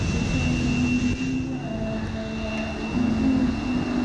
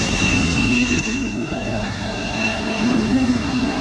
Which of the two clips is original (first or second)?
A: first